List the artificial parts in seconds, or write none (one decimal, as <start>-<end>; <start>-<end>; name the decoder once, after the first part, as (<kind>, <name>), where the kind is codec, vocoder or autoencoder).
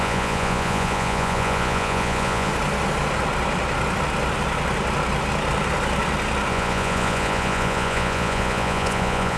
0.0-2.5 (vocoder, Vocos); 6.5-9.4